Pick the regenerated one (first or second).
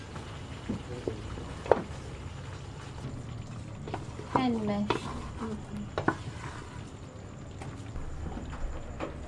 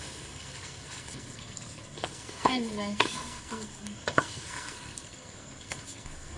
second